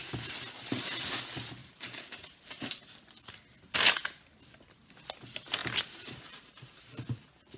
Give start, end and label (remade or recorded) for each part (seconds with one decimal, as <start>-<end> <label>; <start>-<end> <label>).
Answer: 0.0-1.6 recorded; 1.6-2.8 remade; 2.8-5.6 recorded; 5.6-7.6 remade